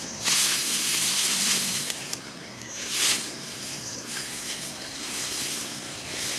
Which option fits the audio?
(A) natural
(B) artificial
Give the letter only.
B